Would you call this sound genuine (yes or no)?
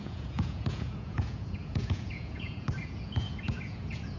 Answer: no